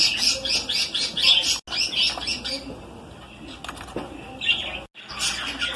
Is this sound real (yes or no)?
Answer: yes